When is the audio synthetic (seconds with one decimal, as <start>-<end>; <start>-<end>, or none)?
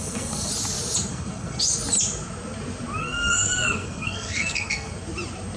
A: 0.0-0.5; 1.1-1.6; 3.0-4.9